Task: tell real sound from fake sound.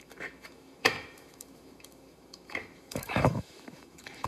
fake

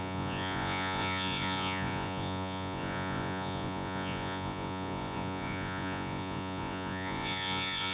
fake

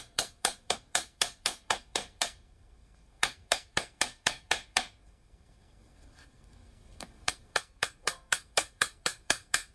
fake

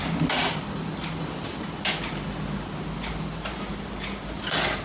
real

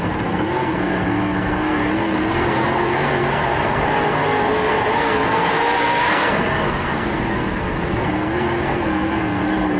fake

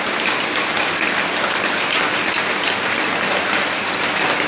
real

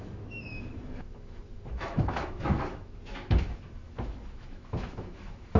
fake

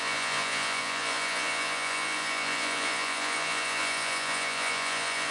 fake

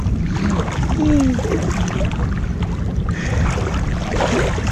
real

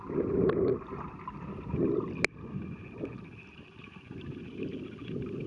real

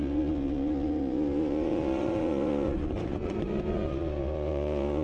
fake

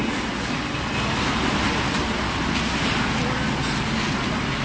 real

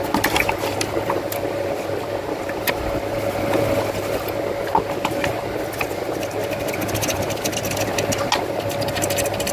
real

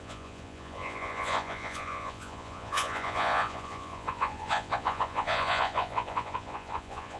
fake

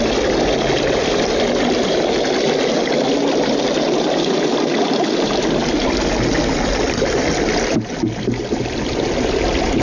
real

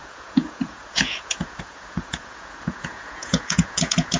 fake